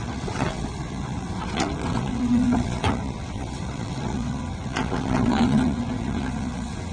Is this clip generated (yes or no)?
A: yes